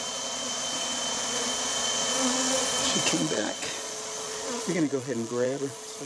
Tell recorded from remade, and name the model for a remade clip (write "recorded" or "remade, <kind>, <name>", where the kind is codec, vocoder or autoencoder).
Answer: remade, vocoder, Vocos